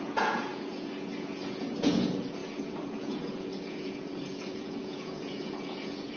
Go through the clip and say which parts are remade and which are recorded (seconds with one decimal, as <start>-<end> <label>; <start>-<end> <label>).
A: 0.0-6.2 remade